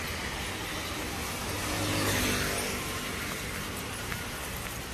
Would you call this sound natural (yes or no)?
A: yes